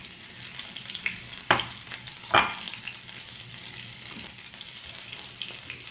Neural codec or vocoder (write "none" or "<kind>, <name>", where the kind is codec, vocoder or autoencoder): none